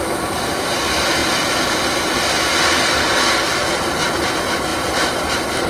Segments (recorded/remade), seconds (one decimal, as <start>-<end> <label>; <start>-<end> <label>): 0.0-1.2 remade; 1.2-3.9 recorded; 3.9-5.7 remade